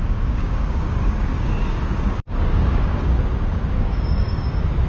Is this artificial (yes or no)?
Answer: yes